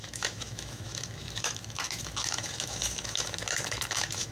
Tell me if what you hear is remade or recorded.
remade